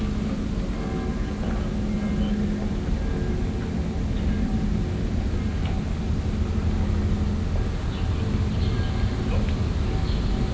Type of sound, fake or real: real